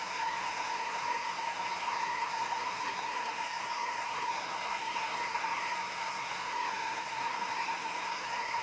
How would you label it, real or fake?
fake